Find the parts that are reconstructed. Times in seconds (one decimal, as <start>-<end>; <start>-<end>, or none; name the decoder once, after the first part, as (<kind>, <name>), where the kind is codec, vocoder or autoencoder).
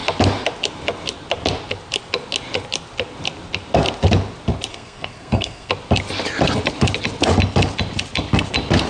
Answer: 4.7-5.7 (codec, SNAC)